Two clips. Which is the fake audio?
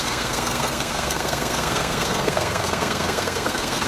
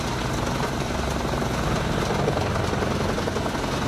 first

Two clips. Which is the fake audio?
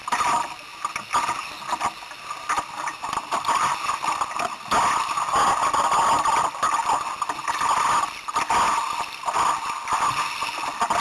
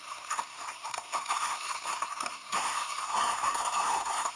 second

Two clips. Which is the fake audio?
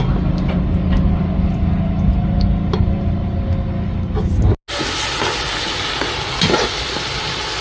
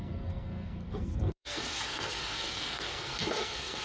second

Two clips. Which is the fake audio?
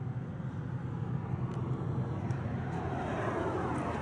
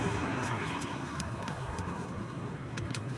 second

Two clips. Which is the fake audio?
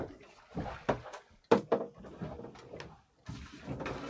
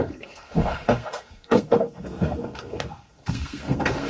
second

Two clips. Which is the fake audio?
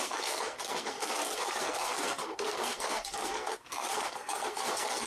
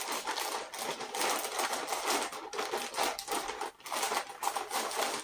first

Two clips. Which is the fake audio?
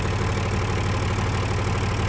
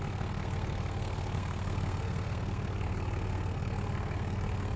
second